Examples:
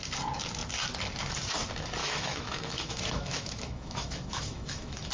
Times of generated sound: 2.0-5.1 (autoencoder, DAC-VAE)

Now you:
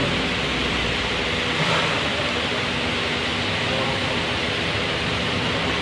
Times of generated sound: 0.0-2.1 (vocoder, BigVGAN v2); 3.5-5.8

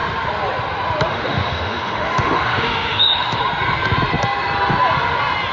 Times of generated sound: 1.1-3.4 (autoencoder, DAC-VAE)

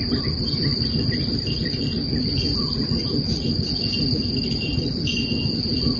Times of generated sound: none

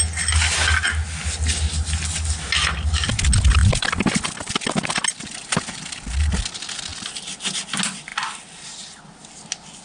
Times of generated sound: 3.6-4.5 (vocoder, BigVGAN v2); 6.9-7.6